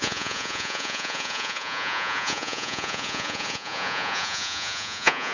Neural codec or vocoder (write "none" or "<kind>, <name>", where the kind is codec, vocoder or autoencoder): vocoder, Vocos